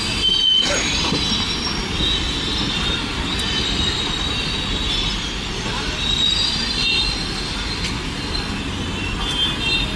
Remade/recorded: recorded